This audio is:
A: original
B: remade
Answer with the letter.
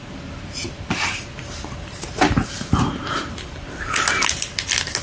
A